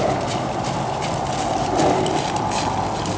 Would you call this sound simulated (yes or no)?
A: no